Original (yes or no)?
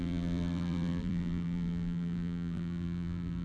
no